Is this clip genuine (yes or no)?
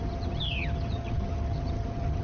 no